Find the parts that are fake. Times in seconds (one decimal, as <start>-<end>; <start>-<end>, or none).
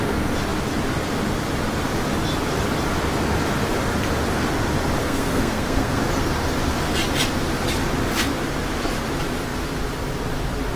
5.0-6.0